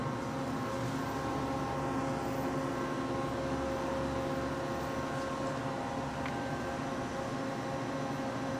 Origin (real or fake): real